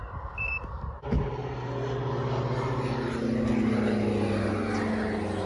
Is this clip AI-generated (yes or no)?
no